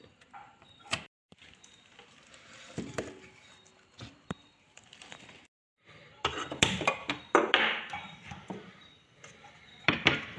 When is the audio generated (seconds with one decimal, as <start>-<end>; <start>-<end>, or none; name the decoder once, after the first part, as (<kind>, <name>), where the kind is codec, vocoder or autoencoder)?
0.0-10.4 (vocoder, BigVGAN v2)